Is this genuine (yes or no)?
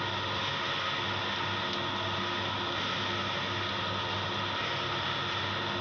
yes